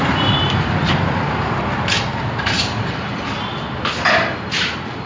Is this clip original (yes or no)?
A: yes